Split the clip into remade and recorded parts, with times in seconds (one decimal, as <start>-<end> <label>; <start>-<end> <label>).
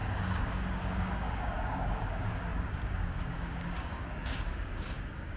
0.0-5.4 remade